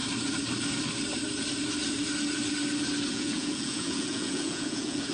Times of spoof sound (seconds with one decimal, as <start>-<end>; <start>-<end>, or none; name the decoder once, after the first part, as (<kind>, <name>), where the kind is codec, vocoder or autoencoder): 3.1-5.1 (vocoder, Vocos)